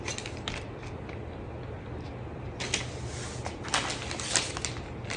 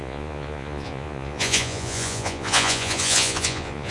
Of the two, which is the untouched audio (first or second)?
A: first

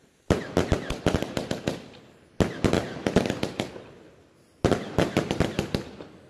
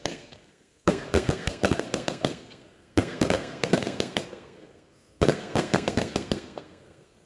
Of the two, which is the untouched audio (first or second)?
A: first